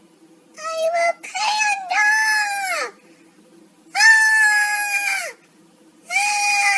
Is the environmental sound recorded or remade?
recorded